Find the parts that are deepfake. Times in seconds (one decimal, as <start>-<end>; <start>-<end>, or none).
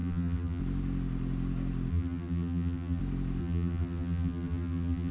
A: 0.0-0.6; 1.9-3.0; 3.4-5.1